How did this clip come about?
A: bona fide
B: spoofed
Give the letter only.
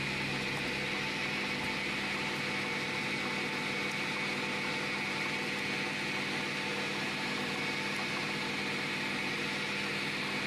A